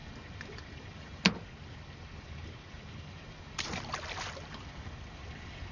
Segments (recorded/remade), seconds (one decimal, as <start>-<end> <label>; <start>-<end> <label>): 0.0-5.7 recorded